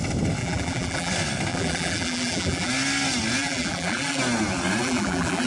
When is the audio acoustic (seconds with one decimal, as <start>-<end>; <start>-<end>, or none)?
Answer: 0.0-0.4; 1.1-1.5; 2.7-3.4; 4.2-4.8